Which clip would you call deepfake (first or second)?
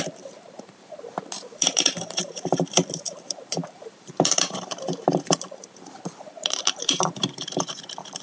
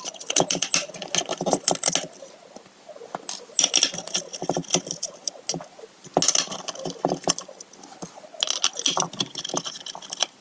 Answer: first